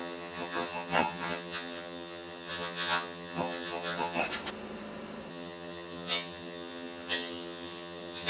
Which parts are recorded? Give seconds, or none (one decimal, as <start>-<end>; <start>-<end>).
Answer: 4.2-5.3